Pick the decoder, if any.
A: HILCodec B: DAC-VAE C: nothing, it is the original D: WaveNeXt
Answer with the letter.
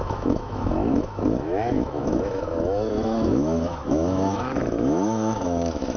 B